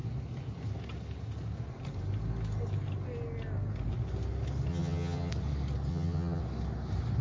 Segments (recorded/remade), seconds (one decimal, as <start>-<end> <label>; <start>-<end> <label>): 0.0-4.7 recorded; 4.7-5.3 remade; 5.3-5.9 recorded; 5.9-6.4 remade; 6.4-7.2 recorded